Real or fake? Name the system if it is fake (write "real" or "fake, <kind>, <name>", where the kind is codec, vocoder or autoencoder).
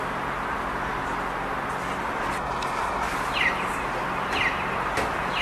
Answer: real